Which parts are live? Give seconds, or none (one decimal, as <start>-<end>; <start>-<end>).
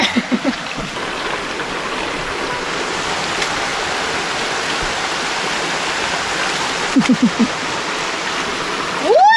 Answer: 0.0-9.4